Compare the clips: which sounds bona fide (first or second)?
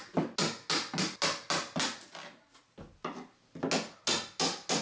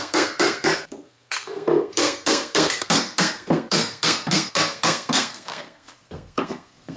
first